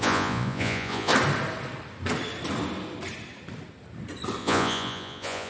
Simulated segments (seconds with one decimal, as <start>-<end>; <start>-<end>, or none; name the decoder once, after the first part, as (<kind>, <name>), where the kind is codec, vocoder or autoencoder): 0.0-1.1 (vocoder, Vocos); 4.4-5.5